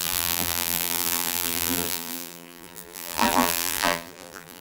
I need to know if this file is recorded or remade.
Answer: remade